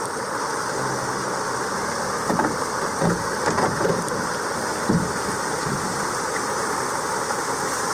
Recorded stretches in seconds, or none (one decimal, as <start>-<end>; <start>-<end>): 0.8-4.7; 6.1-7.9